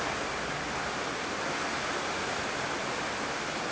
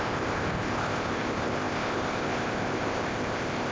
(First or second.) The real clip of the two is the first